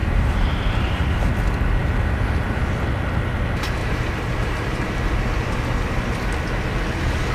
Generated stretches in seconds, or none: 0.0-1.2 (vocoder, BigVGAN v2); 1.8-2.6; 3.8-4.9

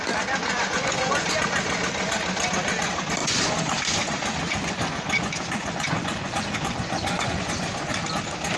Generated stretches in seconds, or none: 0.4-1.3 (vocoder, Vocos); 3.2-7.9

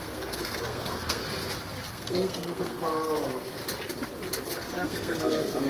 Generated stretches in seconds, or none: 0.0-1.2 (codec, SNAC); 1.9-3.6; 4.7-5.7

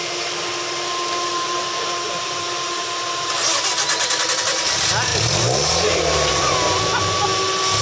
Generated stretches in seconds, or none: 1.3-3.3 (vocoder, BigVGAN v2); 5.1-6.3